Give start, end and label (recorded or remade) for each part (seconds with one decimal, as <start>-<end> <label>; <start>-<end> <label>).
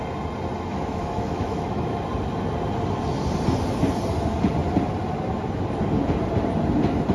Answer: 0.0-0.7 recorded; 0.7-2.0 remade; 2.0-7.1 recorded